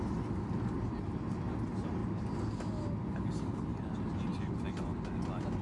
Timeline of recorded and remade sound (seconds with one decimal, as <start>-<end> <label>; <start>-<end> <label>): 0.0-5.6 recorded